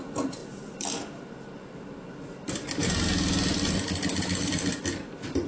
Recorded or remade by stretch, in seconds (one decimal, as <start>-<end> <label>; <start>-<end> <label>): 0.0-5.5 recorded